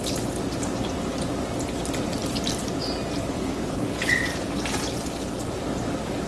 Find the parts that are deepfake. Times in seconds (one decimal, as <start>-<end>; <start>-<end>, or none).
3.2-4.1

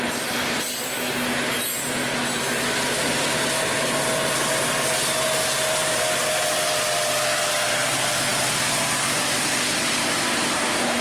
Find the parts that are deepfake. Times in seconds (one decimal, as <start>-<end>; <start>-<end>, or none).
none

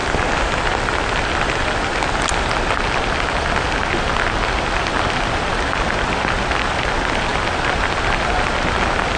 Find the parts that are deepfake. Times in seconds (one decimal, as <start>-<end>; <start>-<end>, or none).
none

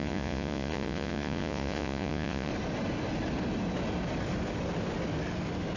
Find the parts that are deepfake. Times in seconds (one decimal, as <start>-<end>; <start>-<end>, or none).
0.0-2.5

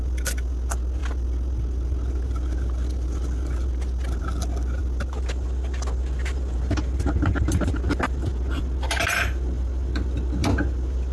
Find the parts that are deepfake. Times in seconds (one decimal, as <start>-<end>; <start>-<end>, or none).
none

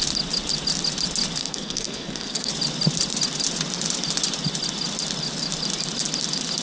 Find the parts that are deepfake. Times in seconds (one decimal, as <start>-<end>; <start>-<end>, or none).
1.4-2.5